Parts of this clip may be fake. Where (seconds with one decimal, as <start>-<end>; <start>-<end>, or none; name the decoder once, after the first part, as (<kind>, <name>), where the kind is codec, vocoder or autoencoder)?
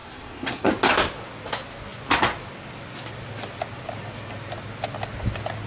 0.0-0.7 (codec, SNAC)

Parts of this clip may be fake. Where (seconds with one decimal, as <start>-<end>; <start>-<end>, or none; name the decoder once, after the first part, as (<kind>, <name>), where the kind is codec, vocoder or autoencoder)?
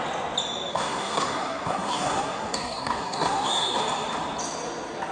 0.7-3.8 (codec, SNAC)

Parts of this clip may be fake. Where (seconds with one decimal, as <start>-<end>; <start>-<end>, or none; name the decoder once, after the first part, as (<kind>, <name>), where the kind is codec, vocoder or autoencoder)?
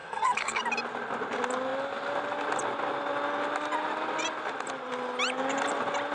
0.0-0.6 (codec, SNAC)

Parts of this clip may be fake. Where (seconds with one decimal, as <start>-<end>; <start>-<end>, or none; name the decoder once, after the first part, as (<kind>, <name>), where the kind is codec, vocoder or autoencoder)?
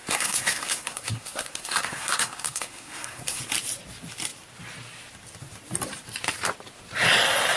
0.0-3.4 (codec, SNAC)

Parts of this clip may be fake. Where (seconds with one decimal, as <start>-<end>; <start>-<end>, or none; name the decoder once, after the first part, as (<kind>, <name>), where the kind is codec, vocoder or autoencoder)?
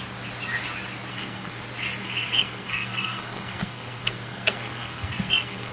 1.1-1.6 (codec, SNAC); 2.0-5.7